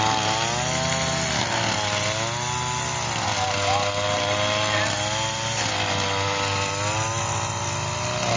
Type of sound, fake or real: real